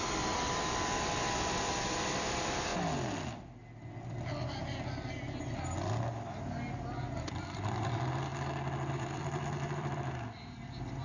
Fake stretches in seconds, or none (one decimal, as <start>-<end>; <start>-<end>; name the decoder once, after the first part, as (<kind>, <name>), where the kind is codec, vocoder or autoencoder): 0.0-2.7 (vocoder, BigVGAN v2); 7.1-8.3; 8.9-11.0